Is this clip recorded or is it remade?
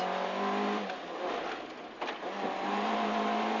recorded